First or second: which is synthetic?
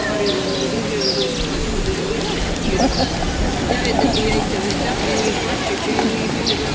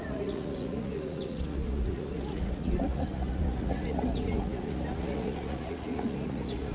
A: second